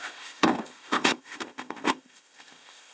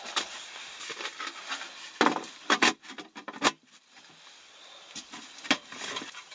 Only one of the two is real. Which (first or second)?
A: second